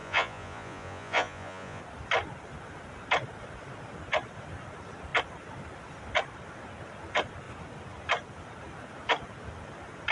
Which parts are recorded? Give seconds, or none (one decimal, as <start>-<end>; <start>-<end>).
1.8-10.1

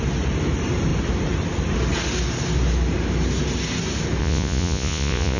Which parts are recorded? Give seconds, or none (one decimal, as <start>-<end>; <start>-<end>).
0.0-4.2

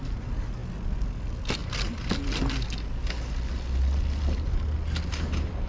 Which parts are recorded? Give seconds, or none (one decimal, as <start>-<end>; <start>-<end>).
0.0-5.7

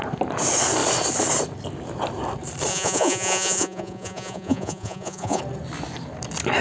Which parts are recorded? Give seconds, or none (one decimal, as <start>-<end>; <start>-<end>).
0.0-2.7; 5.4-6.6

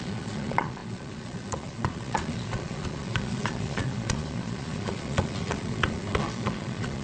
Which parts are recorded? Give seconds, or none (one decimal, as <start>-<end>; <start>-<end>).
none

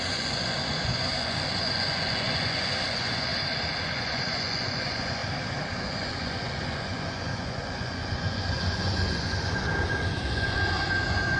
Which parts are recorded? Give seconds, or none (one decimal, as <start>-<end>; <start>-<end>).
3.3-3.8; 5.2-5.8